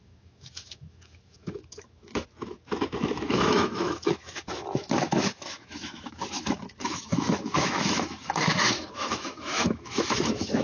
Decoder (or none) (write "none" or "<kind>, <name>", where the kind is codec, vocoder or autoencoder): autoencoder, DAC-VAE